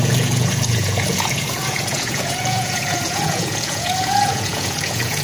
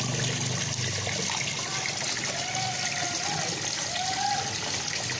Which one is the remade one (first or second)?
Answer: first